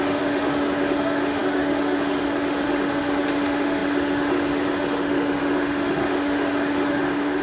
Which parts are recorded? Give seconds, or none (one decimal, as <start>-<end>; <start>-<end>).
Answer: none